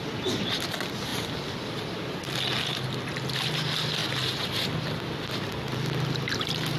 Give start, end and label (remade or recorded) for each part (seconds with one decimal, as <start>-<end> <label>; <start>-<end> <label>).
0.0-6.8 recorded